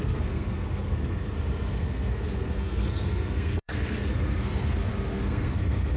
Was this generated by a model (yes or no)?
yes